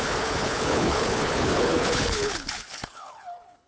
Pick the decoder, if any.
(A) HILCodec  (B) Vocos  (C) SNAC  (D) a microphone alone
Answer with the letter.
A